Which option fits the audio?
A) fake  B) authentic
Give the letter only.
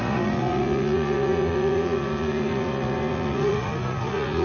A